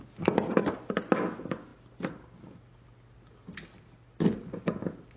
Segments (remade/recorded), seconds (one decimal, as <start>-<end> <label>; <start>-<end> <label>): 0.0-5.2 recorded